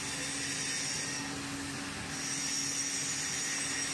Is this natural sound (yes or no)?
yes